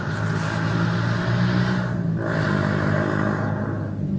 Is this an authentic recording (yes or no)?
yes